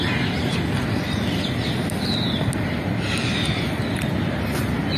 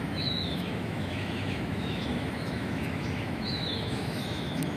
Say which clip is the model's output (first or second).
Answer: second